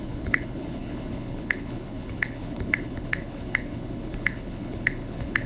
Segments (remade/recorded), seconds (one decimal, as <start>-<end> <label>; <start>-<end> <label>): 0.0-5.5 remade